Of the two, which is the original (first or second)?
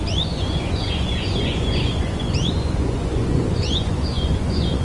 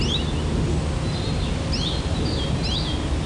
second